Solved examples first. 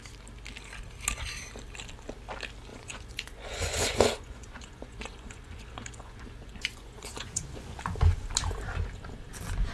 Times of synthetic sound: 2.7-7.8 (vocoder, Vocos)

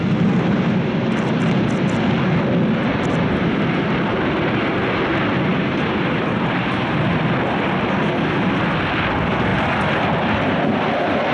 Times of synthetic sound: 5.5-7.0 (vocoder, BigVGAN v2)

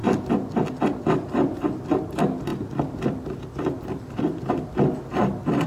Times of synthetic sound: none